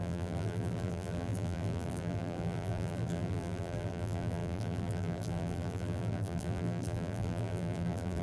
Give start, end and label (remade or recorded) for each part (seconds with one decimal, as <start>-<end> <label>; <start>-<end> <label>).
0.0-8.2 remade